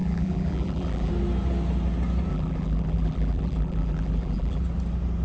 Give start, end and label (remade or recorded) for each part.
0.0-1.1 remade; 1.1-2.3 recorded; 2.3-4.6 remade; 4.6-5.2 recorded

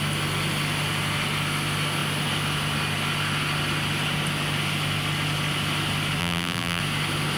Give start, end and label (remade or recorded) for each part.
0.0-6.2 recorded; 6.2-6.8 remade; 6.8-7.4 recorded

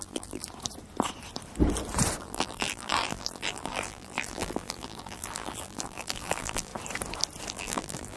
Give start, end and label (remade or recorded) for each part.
0.0-0.4 remade; 0.4-2.2 recorded; 2.2-6.7 remade; 6.7-7.5 recorded; 7.5-8.2 remade

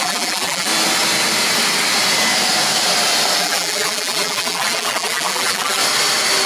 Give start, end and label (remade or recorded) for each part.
0.0-0.7 remade; 0.7-3.4 recorded; 3.4-5.8 remade; 5.8-6.5 recorded